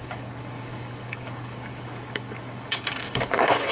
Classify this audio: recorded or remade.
remade